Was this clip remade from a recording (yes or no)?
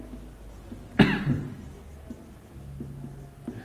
no